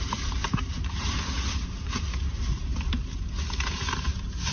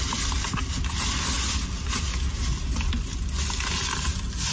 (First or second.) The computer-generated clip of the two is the first